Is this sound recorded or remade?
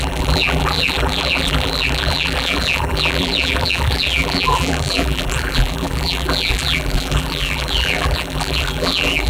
remade